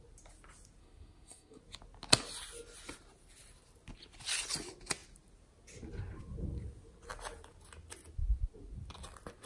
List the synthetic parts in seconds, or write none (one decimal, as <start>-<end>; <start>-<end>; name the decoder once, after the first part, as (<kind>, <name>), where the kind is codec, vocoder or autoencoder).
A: 0.8-1.6 (codec, SNAC)